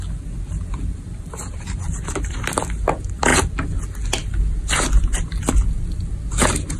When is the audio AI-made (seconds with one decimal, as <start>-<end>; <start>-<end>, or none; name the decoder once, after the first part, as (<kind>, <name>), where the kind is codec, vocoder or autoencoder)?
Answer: 0.0-3.3 (vocoder, BigVGAN v2)

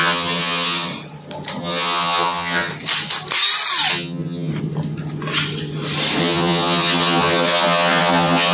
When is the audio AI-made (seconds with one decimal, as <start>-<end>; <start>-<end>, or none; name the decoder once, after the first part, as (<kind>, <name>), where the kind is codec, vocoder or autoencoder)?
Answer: 0.0-0.9 (vocoder, HiFi-GAN); 1.6-2.7; 3.9-4.5; 6.2-8.5

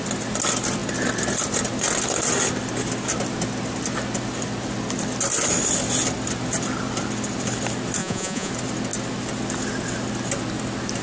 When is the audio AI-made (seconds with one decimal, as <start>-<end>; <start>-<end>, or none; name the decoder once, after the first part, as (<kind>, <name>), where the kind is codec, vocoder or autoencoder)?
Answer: 8.0-8.5 (vocoder, Vocos)

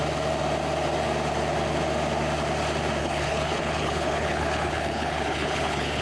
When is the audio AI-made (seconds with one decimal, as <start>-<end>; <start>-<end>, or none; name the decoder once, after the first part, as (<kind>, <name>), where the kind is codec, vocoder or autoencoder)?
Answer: 3.0-6.0 (codec, HILCodec)

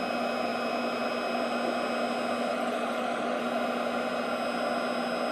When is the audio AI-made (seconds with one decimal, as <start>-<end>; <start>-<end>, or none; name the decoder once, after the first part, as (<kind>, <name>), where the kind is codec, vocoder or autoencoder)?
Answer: 2.5-3.4 (codec, DAC)

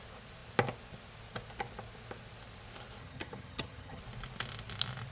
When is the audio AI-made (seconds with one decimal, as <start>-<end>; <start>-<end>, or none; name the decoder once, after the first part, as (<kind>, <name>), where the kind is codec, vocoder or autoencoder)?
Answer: 3.0-4.0 (vocoder, HiFi-GAN)

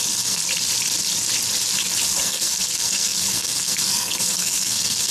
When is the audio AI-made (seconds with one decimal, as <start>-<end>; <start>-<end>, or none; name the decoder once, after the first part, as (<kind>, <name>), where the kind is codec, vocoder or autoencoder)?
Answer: 0.0-0.4 (codec, SNAC); 2.2-5.1

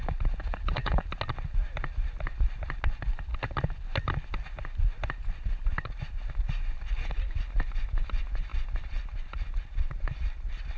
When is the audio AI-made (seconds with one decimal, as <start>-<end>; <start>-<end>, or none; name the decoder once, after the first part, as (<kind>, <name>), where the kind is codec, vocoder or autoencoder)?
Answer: 0.4-1.1 (vocoder, Vocos)